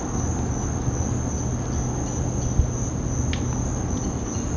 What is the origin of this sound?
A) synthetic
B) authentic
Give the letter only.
B